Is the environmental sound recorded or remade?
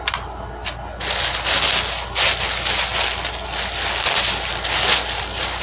recorded